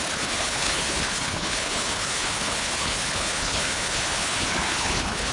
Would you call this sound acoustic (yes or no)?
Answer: no